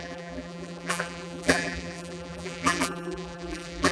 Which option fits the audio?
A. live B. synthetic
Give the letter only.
B